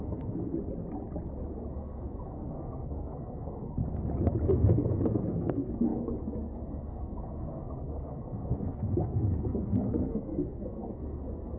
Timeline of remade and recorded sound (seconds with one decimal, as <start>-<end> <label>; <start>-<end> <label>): 0.0-0.5 remade; 0.5-1.7 recorded; 1.7-3.8 remade; 3.8-4.5 recorded; 4.5-11.6 remade